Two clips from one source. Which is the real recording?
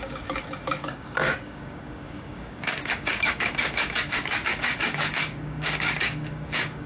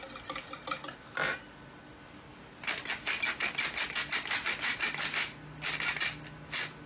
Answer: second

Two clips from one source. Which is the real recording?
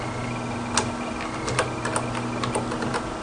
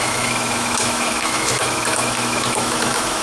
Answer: first